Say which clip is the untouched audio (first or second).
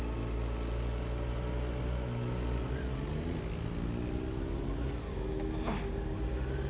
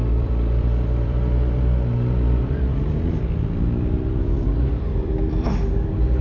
first